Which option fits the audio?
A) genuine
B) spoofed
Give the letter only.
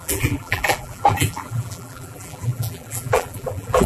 B